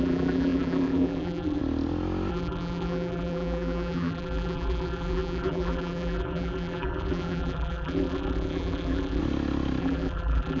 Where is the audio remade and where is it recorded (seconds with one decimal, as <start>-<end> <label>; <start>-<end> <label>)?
0.0-1.6 remade; 1.6-2.3 recorded; 2.3-9.2 remade; 9.2-9.8 recorded; 9.8-10.6 remade